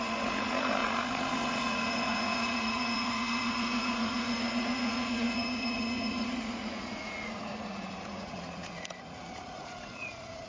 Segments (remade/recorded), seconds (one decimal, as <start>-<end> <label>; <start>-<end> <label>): 0.0-10.5 remade